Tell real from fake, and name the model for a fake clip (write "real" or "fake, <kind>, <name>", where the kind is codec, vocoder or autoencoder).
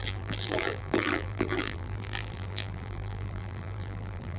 fake, vocoder, BigVGAN v2